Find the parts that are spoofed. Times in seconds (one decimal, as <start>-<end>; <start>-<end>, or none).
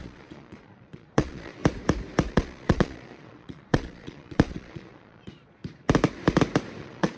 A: 0.0-1.6; 2.3-5.6; 6.8-7.2